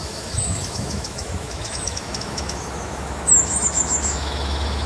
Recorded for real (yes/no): no